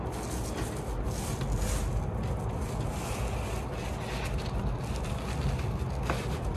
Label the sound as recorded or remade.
recorded